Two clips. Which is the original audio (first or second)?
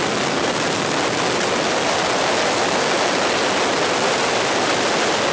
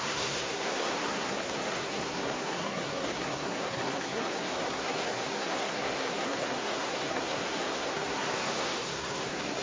first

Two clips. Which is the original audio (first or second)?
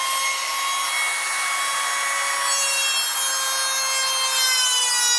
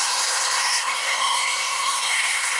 first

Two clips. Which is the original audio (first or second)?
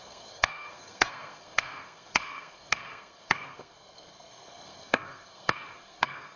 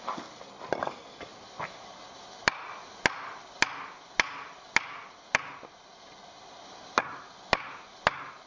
second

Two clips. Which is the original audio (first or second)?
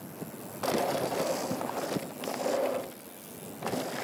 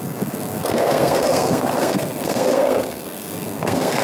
first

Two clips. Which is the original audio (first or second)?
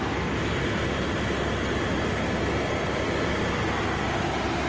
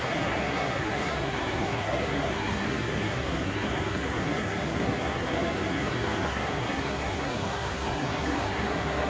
first